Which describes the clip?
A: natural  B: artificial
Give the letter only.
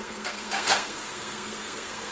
B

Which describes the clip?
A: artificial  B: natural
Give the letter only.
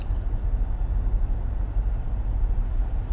B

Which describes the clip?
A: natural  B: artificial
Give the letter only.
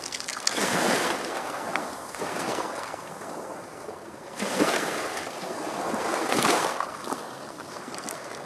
B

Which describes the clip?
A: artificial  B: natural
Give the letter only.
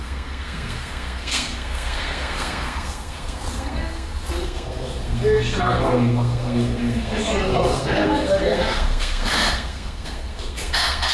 A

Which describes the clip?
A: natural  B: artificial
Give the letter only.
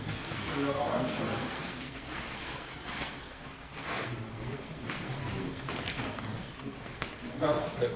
B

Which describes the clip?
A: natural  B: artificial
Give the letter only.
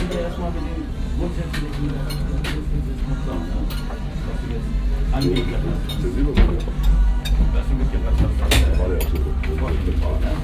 A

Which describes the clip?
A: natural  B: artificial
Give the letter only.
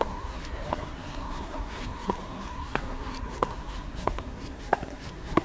B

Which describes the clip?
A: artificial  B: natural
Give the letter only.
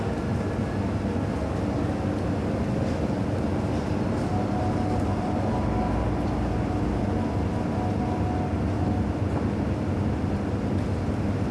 B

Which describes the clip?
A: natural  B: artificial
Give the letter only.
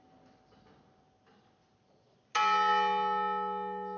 A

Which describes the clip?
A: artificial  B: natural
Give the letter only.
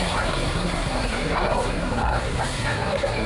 A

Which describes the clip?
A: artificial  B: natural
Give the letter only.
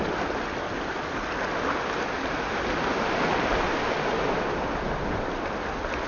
B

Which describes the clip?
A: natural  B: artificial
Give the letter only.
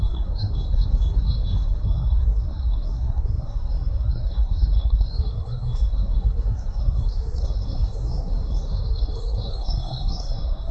B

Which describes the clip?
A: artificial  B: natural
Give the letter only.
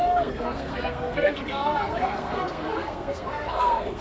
A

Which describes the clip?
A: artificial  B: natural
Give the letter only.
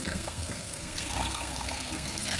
A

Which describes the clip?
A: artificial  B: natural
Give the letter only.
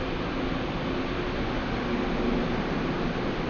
B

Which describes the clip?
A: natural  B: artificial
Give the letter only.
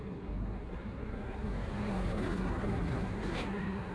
B